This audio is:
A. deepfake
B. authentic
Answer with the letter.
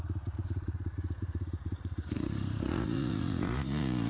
A